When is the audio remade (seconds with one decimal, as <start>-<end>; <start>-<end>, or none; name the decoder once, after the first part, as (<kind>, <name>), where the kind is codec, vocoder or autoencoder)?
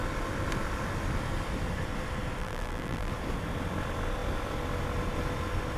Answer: 2.4-3.1 (vocoder, BigVGAN v2)